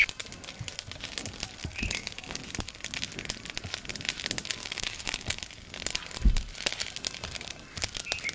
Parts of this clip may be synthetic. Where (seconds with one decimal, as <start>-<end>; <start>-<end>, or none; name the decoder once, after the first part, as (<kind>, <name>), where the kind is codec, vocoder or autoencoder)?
1.6-2.4 (codec, DAC); 4.6-5.4